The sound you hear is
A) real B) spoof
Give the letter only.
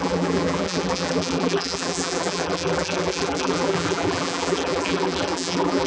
B